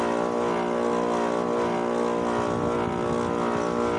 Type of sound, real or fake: real